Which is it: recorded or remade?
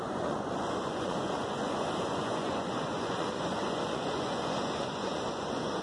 remade